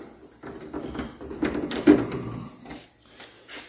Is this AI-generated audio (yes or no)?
no